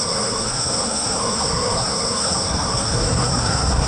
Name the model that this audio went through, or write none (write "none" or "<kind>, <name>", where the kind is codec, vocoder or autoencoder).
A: codec, SNAC